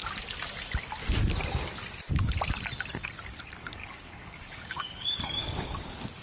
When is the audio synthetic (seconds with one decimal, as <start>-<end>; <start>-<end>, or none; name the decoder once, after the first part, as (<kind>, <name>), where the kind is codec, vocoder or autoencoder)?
3.4-6.2 (codec, DAC)